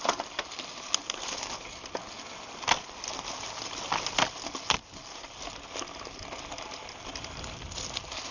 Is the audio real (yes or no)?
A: yes